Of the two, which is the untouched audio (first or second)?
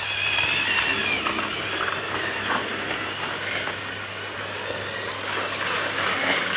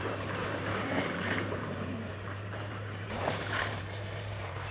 first